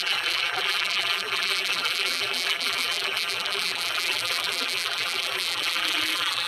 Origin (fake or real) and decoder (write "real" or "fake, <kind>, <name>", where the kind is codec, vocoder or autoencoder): fake, vocoder, BigVGAN v2